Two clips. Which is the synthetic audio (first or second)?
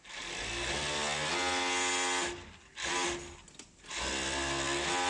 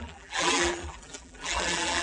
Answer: second